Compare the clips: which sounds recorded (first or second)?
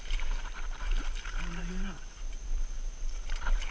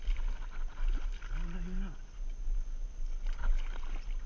second